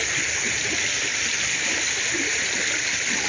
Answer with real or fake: real